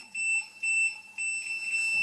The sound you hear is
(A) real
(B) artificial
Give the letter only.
A